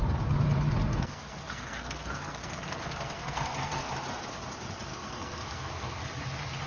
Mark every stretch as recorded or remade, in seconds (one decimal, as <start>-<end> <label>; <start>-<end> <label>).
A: 0.0-0.9 recorded; 0.9-3.9 remade; 3.9-4.9 recorded; 4.9-6.0 remade; 6.0-6.7 recorded